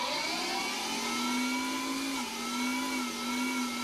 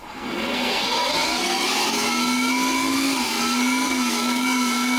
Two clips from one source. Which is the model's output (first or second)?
second